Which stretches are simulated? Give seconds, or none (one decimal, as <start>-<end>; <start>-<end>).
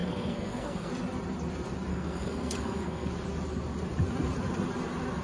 0.0-0.9; 1.9-3.1